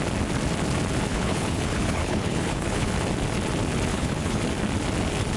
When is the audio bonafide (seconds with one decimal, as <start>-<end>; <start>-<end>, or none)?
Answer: 0.0-1.1; 2.9-3.9; 4.4-5.4